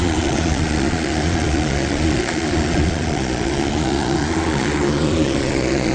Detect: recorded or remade remade